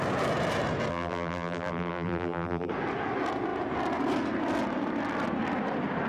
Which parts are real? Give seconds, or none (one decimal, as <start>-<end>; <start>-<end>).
0.0-0.9; 2.7-6.1